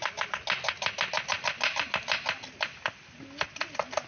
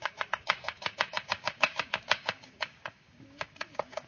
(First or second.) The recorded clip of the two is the first